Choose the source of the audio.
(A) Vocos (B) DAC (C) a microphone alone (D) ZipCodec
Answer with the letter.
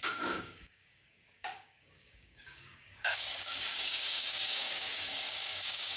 B